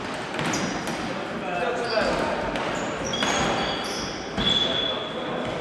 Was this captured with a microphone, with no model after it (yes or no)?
yes